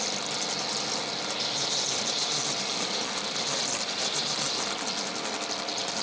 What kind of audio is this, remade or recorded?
recorded